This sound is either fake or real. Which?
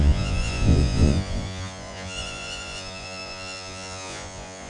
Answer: fake